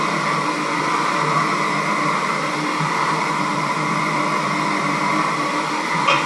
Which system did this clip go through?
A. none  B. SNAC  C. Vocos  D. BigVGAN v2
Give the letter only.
D